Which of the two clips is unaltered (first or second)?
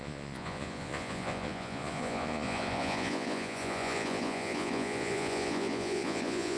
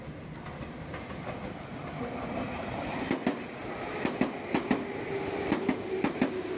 second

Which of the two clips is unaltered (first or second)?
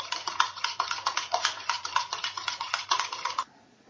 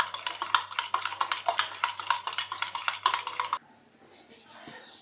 second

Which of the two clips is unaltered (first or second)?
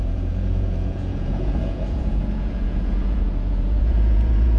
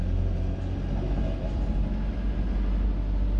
second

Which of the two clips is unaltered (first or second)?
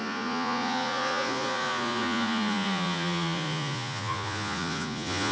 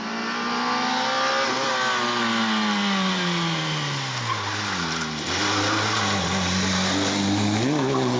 second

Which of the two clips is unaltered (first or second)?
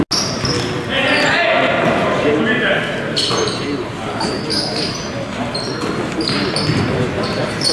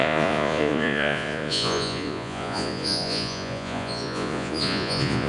first